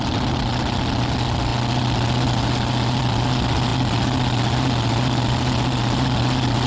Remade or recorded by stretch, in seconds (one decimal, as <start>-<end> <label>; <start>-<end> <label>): 0.0-6.7 recorded